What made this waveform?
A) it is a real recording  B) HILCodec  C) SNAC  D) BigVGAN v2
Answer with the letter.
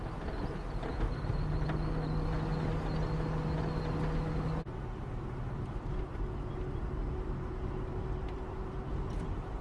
A